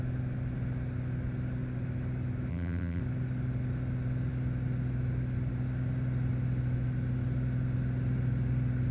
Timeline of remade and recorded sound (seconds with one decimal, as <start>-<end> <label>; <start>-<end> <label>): 0.0-2.5 recorded; 2.5-3.0 remade; 3.0-8.9 recorded